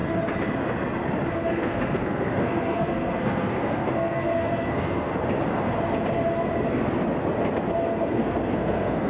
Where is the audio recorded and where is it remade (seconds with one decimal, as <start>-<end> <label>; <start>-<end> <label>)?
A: 0.0-1.3 recorded; 1.3-5.1 remade; 5.1-7.7 recorded; 7.7-9.1 remade